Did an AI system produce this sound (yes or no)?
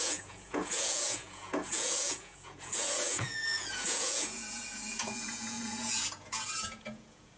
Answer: yes